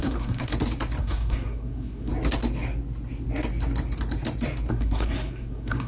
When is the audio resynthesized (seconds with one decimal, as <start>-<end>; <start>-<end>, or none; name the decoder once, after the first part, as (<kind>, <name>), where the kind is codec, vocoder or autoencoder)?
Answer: 0.0-0.5 (codec, SNAC); 1.0-2.1; 4.7-5.9

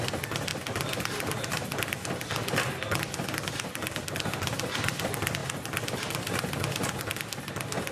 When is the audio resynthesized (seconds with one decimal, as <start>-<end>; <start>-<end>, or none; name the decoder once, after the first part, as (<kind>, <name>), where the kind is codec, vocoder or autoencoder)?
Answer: none

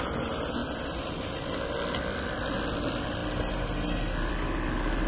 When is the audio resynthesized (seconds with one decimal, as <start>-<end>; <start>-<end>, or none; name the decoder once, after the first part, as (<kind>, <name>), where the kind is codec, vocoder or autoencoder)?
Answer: none

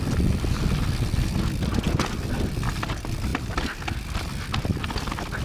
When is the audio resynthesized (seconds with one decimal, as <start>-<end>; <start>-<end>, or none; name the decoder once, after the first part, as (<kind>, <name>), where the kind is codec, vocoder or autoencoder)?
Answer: none

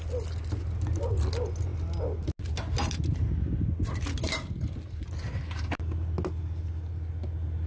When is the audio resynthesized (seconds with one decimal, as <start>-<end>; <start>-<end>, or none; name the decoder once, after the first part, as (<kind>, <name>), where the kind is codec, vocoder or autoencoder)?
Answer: none